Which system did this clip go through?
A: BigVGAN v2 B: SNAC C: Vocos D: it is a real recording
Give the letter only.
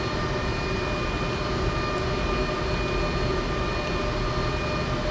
D